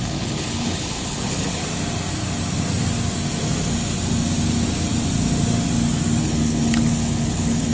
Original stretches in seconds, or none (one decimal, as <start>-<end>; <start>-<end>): 1.6-6.2